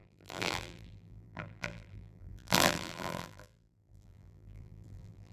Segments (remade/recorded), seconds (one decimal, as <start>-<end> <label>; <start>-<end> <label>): 0.0-5.3 remade